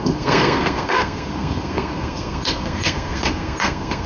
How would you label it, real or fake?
fake